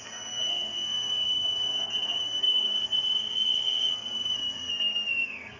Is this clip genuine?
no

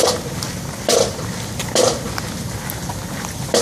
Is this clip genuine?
yes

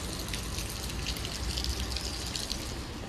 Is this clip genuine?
yes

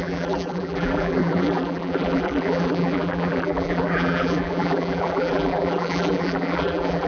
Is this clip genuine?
no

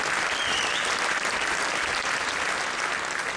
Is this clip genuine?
yes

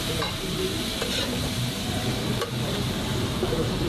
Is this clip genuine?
no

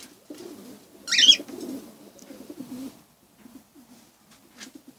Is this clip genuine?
yes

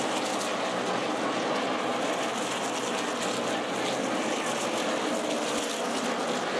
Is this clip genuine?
yes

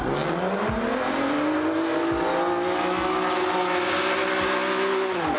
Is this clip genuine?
yes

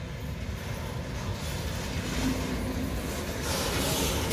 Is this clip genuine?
yes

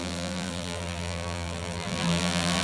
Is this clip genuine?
no